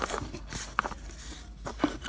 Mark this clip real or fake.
fake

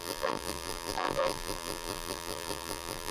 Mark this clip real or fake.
fake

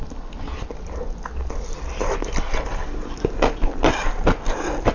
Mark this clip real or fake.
real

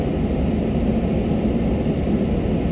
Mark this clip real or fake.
real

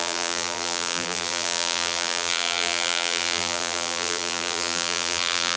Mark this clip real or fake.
fake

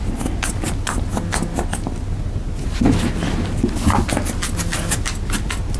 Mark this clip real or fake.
real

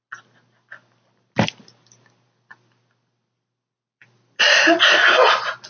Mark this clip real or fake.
real